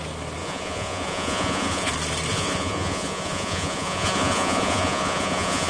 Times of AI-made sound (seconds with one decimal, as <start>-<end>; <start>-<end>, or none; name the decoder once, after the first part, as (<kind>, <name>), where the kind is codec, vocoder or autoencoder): 0.4-1.9 (vocoder, Vocos); 2.3-5.7